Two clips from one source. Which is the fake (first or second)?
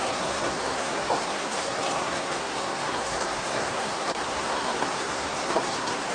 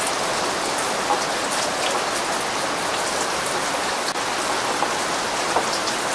first